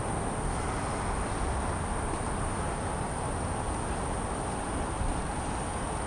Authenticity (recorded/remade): recorded